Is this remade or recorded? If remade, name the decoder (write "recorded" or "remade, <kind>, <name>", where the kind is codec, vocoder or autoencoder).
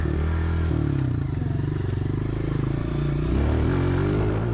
recorded